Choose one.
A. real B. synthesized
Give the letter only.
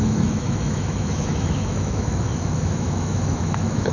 B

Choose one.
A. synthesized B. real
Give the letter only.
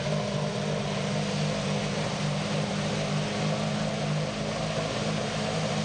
B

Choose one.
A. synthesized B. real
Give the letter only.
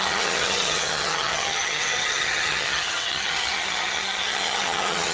A